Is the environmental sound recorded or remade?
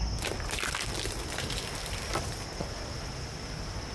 recorded